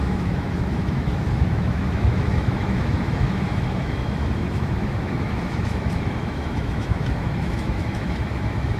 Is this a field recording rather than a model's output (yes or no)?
no